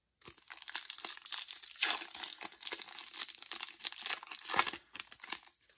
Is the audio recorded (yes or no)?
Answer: yes